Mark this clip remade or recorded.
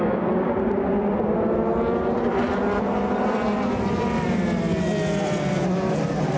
recorded